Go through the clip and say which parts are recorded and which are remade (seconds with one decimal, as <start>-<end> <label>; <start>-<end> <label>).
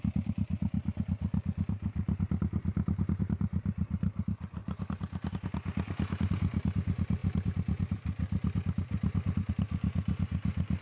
0.0-10.8 recorded